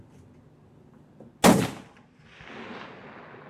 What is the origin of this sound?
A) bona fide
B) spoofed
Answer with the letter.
A